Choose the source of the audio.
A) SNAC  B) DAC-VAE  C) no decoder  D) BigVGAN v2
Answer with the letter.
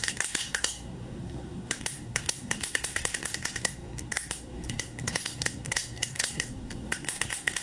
A